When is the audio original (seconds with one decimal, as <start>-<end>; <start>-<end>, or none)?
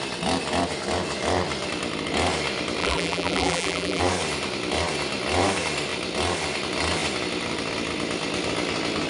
0.0-2.8; 4.0-9.1